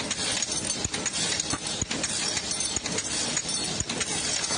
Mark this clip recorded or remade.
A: recorded